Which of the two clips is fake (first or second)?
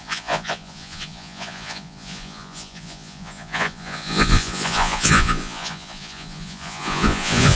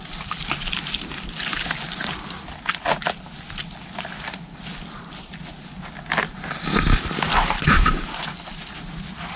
first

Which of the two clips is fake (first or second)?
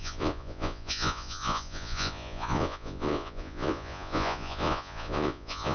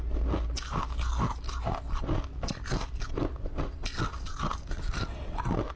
first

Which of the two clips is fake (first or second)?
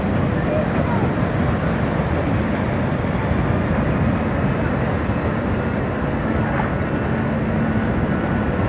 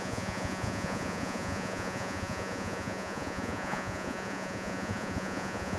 second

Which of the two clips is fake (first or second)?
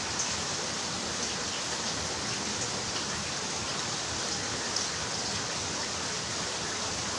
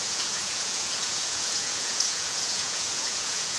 second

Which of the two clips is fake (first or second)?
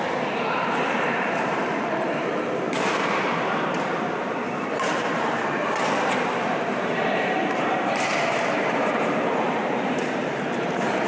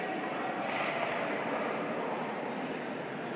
first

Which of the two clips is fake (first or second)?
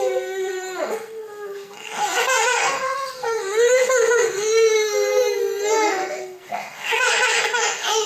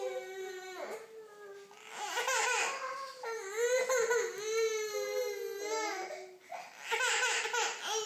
first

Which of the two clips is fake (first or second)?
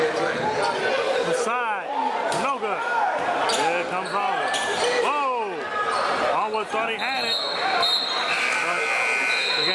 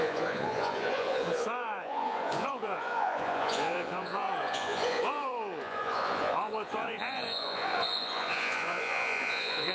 second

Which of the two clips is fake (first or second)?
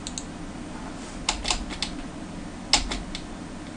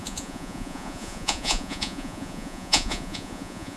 second